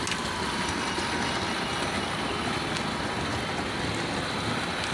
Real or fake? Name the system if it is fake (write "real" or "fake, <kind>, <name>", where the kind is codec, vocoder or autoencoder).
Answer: real